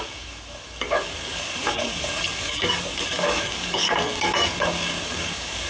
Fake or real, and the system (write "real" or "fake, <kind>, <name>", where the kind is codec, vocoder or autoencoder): fake, codec, DAC